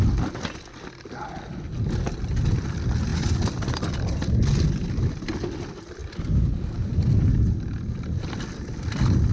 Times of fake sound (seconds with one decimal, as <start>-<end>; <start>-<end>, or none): none